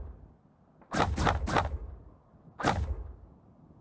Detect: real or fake real